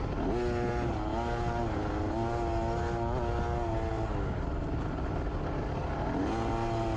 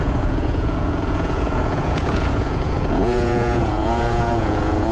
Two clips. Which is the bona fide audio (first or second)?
first